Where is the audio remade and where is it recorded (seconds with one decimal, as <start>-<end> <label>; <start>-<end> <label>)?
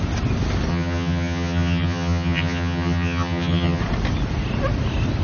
0.0-0.7 recorded; 0.7-3.8 remade; 3.8-5.2 recorded